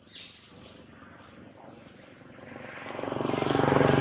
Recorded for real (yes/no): yes